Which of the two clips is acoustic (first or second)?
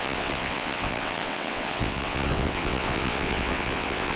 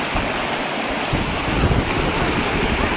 second